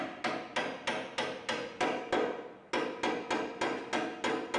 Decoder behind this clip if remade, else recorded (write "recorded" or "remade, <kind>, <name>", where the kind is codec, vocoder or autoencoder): recorded